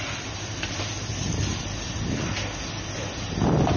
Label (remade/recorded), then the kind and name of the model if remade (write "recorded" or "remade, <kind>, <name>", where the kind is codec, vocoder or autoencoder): recorded